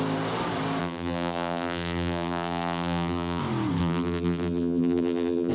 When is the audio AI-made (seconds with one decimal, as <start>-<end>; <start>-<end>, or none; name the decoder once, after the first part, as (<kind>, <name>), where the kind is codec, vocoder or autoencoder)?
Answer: 0.8-3.4 (vocoder, BigVGAN v2); 3.8-5.5